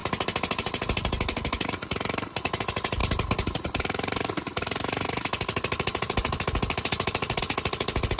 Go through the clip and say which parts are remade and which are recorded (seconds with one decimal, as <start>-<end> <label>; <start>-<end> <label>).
0.0-2.6 remade; 2.6-3.0 recorded; 3.0-7.4 remade; 7.4-8.2 recorded